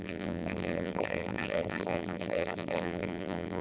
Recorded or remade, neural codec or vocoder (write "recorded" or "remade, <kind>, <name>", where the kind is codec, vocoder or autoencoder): remade, vocoder, BigVGAN v2